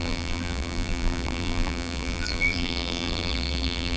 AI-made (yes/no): yes